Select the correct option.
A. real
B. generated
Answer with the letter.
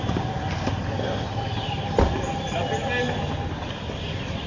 A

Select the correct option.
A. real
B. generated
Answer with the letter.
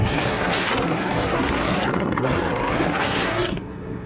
B